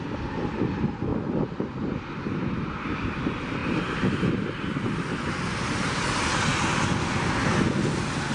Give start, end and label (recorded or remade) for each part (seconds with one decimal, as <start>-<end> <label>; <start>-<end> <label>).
0.0-3.6 recorded; 3.6-4.8 remade; 4.8-8.3 recorded